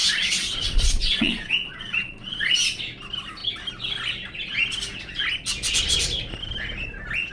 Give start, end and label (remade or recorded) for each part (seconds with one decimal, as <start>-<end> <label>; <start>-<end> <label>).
0.0-2.8 remade; 2.8-7.3 recorded